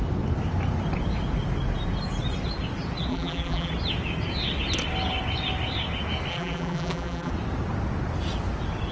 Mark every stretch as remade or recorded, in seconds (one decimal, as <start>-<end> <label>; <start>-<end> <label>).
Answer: 0.0-3.1 recorded; 3.1-3.7 remade; 3.7-6.3 recorded; 6.3-7.3 remade; 7.3-8.9 recorded